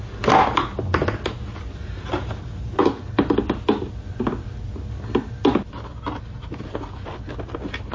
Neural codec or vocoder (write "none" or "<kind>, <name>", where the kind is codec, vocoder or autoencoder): none